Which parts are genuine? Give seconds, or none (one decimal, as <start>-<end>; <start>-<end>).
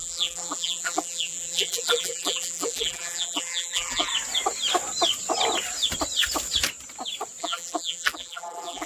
4.1-7.4